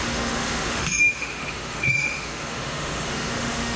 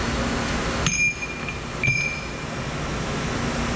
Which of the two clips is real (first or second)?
second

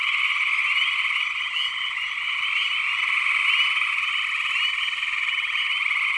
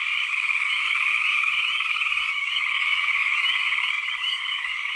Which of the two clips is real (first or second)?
first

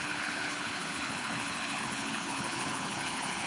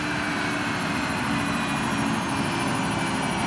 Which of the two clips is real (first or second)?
second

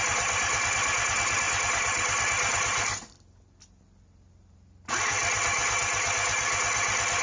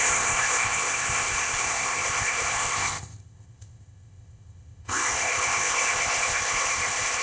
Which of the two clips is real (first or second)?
first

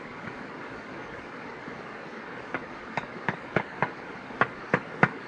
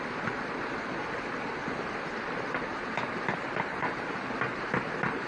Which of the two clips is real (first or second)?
second